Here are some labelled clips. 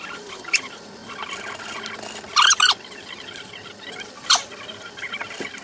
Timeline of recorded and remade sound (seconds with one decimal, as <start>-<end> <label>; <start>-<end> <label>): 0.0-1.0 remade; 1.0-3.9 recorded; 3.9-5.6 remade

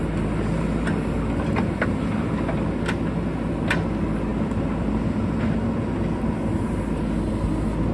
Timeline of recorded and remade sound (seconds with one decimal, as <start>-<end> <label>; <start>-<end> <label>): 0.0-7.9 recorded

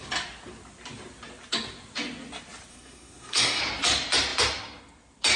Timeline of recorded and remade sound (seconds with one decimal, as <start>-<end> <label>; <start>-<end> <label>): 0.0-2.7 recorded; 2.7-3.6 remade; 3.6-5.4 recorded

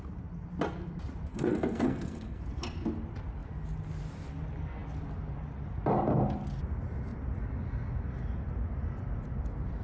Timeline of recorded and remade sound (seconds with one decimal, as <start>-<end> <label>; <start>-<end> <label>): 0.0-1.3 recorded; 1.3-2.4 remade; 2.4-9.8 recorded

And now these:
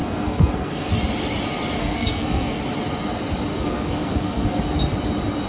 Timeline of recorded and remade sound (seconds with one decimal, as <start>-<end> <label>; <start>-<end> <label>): 0.0-0.9 remade; 0.9-1.8 recorded; 1.8-2.6 remade; 2.6-3.5 recorded; 3.5-4.6 remade; 4.6-5.5 recorded